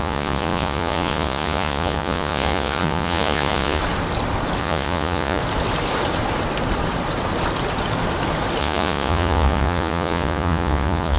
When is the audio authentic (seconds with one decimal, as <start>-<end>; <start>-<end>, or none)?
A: 3.8-4.6; 5.4-8.6